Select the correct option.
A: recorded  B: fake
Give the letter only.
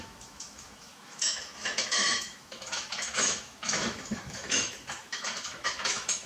B